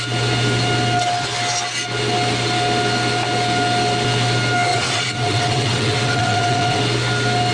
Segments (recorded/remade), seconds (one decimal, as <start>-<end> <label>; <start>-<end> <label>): 0.0-4.7 recorded; 4.7-6.8 remade; 6.8-7.5 recorded